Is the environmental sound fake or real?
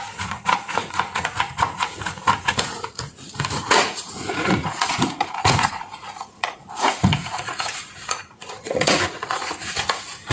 fake